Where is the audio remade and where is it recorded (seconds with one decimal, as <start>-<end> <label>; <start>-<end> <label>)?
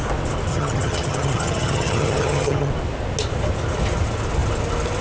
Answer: 0.0-0.5 recorded; 0.5-2.7 remade; 2.7-5.0 recorded